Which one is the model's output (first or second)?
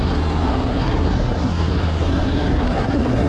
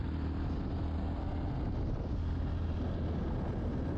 first